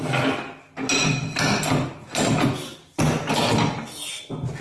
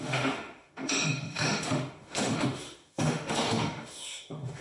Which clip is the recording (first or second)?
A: first